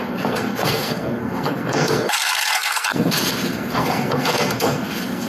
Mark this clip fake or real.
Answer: fake